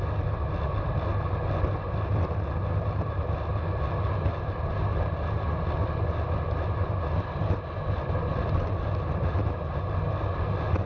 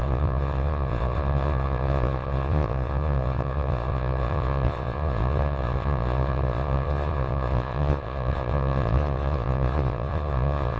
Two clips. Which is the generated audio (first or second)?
second